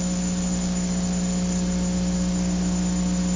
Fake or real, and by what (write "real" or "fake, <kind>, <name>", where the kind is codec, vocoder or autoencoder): real